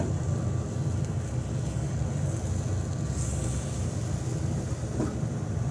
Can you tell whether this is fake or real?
real